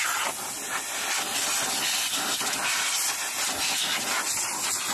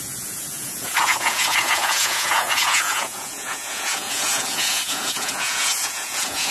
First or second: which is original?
first